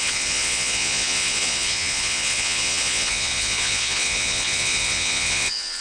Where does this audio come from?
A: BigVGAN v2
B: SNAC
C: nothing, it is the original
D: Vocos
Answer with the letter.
D